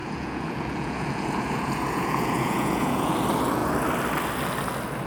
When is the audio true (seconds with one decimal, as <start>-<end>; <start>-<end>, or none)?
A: 3.1-5.1